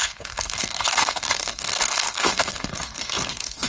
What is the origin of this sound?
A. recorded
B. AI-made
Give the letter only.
B